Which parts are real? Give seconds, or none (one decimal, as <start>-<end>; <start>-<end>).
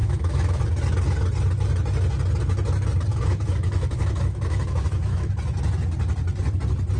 0.6-3.1; 5.3-7.0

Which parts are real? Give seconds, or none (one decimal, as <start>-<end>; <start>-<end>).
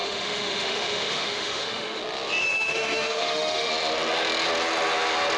2.0-2.4; 3.7-5.4